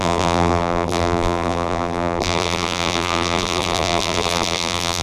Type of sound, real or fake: fake